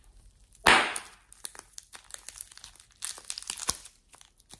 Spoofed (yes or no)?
no